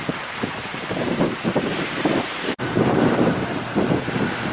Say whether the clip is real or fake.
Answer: fake